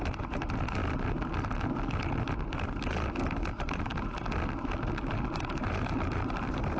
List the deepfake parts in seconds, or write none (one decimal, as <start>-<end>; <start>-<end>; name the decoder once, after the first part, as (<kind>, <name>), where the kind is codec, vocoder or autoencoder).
0.0-0.8 (vocoder, BigVGAN v2); 3.5-3.9; 5.1-6.8